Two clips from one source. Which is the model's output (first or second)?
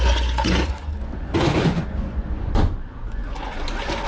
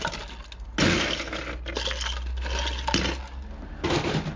first